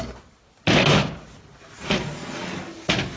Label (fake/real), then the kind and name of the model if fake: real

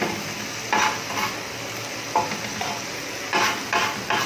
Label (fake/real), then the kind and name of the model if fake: fake, vocoder, BigVGAN v2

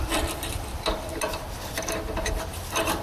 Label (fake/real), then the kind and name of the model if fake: fake, vocoder, BigVGAN v2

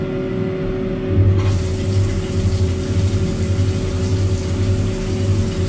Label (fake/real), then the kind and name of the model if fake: real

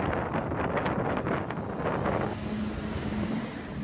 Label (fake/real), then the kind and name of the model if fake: real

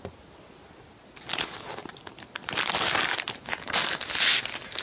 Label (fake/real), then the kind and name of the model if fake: real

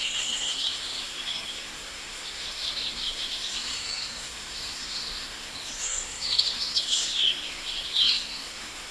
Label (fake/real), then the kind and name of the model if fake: fake, codec, SNAC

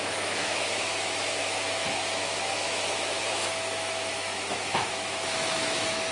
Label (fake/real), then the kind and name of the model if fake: fake, autoencoder, DAC-VAE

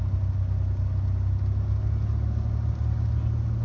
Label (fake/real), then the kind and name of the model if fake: real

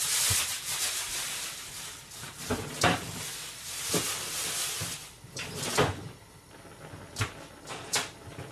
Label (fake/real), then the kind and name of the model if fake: real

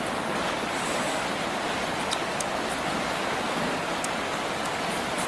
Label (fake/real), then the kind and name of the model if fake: real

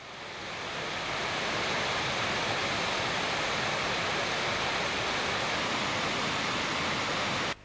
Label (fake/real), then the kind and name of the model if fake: real